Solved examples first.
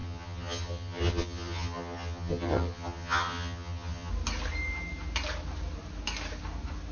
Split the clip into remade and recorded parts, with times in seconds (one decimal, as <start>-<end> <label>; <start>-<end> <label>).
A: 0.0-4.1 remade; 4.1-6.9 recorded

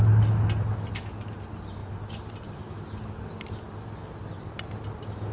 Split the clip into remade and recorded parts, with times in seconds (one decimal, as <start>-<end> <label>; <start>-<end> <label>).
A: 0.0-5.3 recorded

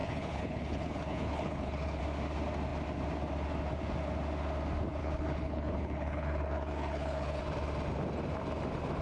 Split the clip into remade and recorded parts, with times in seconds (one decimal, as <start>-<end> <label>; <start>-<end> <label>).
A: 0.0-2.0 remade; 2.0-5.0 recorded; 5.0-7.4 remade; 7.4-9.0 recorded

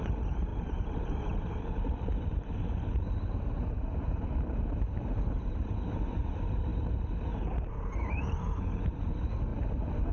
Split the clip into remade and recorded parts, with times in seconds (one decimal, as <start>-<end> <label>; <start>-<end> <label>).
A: 0.0-6.7 remade; 6.7-7.7 recorded; 7.7-10.1 remade